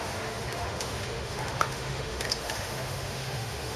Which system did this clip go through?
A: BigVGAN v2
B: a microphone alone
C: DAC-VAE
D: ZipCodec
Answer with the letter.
C